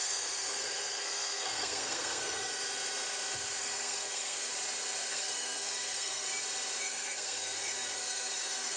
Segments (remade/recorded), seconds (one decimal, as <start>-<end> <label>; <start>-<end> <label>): 0.0-2.5 remade; 2.5-3.6 recorded; 3.6-4.5 remade; 4.5-5.1 recorded; 5.1-6.3 remade; 6.3-6.8 recorded; 6.8-8.8 remade